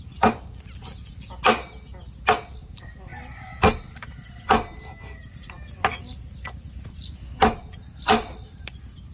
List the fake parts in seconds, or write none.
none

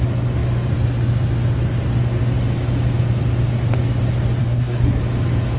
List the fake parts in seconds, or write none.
4.4-5.0 (codec, SNAC)